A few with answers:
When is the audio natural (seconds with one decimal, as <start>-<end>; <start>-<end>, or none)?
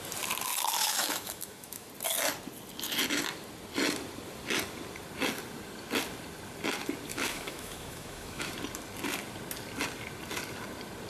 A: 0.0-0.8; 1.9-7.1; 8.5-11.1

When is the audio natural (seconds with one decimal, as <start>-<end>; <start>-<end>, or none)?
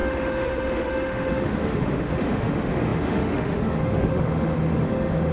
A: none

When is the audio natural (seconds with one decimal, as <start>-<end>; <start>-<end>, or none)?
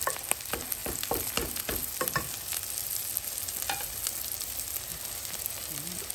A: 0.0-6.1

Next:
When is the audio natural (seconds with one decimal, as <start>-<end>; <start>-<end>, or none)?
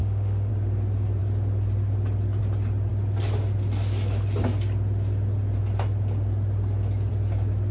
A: 0.5-7.7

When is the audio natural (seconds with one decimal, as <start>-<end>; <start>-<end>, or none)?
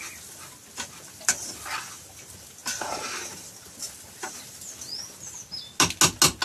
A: 0.0-6.4